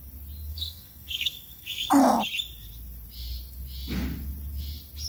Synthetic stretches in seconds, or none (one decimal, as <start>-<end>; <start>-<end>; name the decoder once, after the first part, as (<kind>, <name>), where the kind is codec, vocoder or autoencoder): 0.5-1.9 (codec, SNAC)